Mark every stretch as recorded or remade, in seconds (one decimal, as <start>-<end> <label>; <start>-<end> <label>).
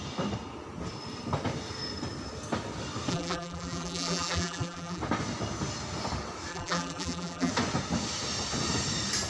0.0-3.1 recorded; 3.1-5.0 remade; 5.0-6.5 recorded; 6.5-7.5 remade; 7.5-9.3 recorded